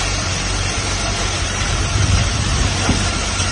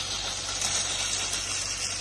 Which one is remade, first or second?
first